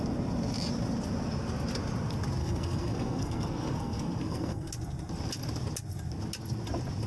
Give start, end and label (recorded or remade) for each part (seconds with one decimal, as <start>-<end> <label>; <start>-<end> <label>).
0.0-2.4 recorded; 2.4-4.7 remade; 4.7-7.1 recorded